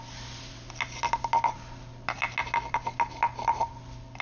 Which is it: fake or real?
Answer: real